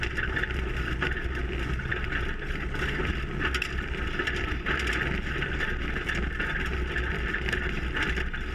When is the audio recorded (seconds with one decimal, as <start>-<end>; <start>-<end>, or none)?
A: 0.0-8.5